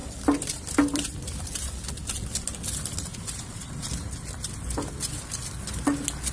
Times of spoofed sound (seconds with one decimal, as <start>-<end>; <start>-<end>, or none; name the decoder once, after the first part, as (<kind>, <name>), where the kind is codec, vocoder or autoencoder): 0.0-1.7 (vocoder, BigVGAN v2); 3.1-3.7